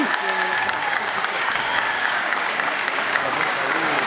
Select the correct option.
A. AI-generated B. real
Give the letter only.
A